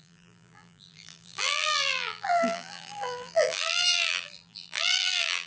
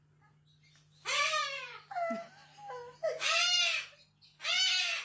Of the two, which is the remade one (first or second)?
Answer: first